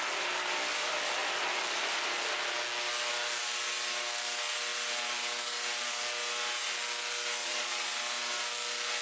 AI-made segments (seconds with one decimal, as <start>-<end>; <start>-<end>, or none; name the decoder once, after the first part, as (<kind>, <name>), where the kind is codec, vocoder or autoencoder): 7.4-7.9 (vocoder, Vocos)